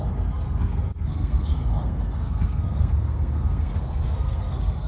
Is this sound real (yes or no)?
no